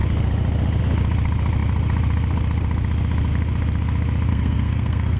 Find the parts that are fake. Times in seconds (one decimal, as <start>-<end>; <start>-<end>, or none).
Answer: 4.3-5.2